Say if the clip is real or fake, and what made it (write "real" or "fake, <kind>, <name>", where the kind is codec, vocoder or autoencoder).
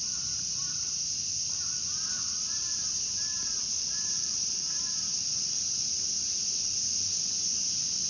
fake, vocoder, BigVGAN v2